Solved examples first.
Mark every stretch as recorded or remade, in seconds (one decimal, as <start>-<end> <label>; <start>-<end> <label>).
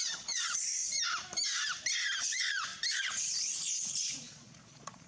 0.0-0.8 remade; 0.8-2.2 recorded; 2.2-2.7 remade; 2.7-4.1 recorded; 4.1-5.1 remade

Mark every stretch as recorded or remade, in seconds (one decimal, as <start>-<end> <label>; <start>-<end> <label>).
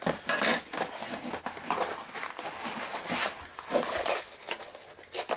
0.0-5.4 recorded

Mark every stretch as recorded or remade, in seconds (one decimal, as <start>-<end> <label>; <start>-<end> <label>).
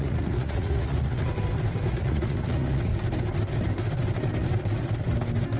0.0-1.3 remade; 1.3-1.9 recorded; 1.9-2.9 remade; 2.9-5.6 recorded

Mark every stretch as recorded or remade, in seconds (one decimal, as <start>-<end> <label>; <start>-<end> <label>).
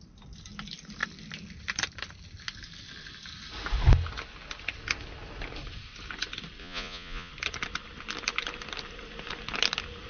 0.0-6.6 recorded; 6.6-7.3 remade; 7.3-10.1 recorded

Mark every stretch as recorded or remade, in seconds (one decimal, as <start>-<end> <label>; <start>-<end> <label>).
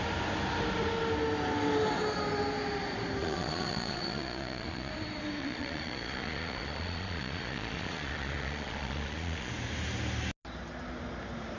0.0-3.2 recorded; 3.2-4.9 remade; 4.9-5.4 recorded; 5.4-9.5 remade; 9.5-11.6 recorded